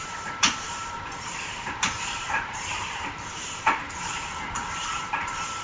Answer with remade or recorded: remade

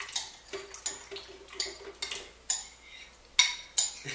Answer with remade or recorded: recorded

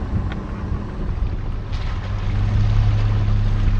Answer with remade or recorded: recorded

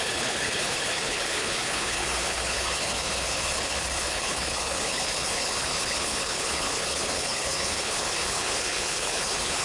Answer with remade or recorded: remade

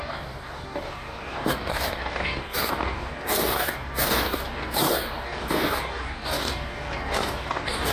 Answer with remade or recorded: remade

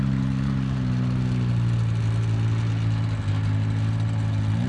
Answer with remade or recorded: recorded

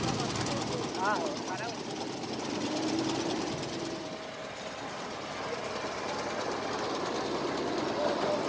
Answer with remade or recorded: recorded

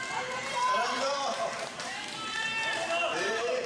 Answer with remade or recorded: remade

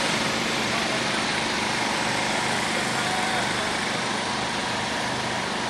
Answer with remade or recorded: remade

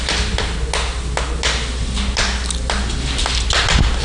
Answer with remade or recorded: recorded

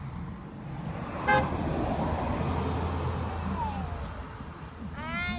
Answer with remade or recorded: recorded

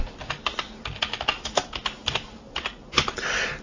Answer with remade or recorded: recorded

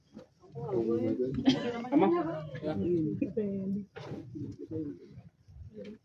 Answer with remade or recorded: recorded